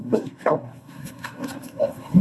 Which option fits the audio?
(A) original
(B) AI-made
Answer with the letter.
B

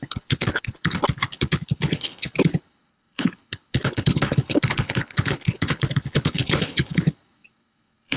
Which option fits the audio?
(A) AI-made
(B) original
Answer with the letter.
A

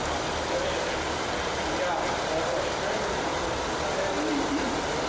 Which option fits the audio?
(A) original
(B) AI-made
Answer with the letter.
A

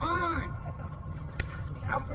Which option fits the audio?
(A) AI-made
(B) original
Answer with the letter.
A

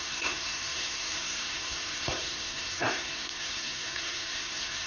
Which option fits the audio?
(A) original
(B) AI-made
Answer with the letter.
B